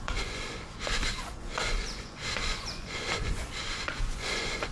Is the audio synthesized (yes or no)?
yes